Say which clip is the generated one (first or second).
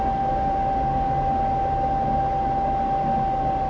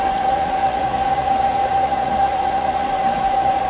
second